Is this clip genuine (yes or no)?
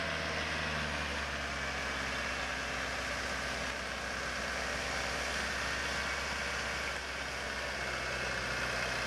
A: yes